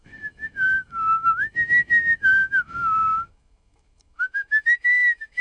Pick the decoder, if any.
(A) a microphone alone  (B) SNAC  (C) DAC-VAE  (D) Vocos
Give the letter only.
C